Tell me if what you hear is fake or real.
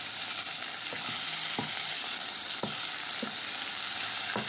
real